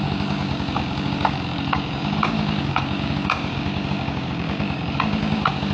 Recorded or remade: remade